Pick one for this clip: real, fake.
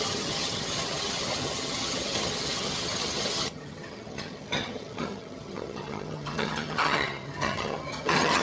fake